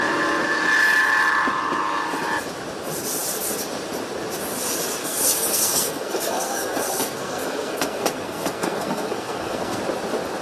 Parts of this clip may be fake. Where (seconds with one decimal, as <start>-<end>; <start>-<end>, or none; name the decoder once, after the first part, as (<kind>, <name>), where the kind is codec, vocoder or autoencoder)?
5.0-9.8 (codec, SNAC)